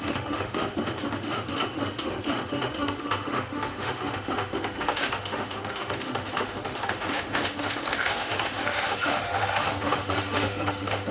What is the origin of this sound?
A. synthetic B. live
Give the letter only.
A